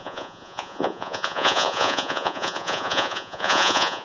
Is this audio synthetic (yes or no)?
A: yes